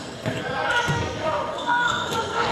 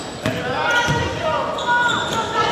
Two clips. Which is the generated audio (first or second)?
first